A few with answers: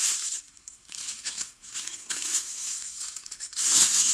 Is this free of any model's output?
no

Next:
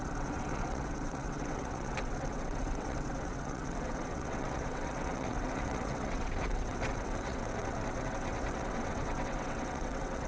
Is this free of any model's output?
no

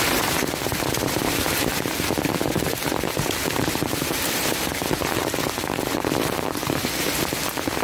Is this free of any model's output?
no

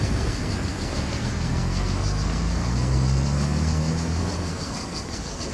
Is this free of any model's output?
no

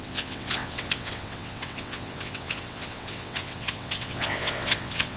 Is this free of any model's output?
no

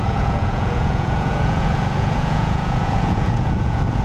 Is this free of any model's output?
no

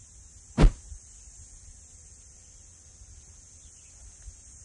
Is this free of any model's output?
yes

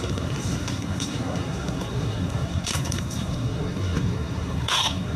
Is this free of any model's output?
no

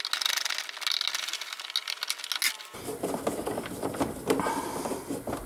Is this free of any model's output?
yes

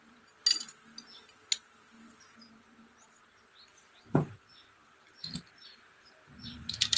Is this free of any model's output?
yes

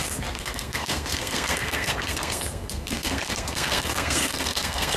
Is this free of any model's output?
no